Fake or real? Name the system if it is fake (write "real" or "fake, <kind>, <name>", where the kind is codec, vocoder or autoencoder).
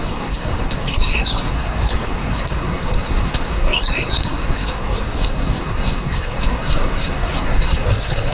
fake, codec, SNAC